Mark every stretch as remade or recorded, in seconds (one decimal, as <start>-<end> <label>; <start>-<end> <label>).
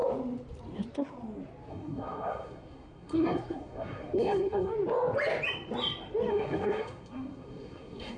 0.0-1.7 recorded; 1.7-4.7 remade; 4.7-6.3 recorded; 6.3-8.2 remade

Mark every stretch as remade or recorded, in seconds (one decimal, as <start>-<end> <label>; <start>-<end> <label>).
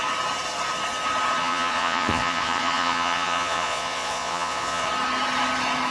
0.0-1.4 recorded; 1.4-4.9 remade; 4.9-5.9 recorded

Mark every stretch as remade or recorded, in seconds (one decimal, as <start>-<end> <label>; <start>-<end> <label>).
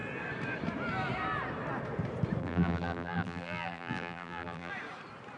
0.0-2.4 recorded; 2.4-4.7 remade; 4.7-5.4 recorded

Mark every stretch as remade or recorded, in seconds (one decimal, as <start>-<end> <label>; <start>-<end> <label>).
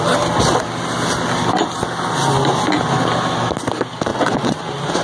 0.0-4.1 recorded; 4.1-4.6 remade; 4.6-5.0 recorded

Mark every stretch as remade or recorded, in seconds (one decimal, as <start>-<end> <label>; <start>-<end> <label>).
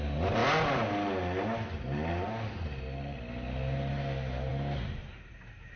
0.0-5.8 recorded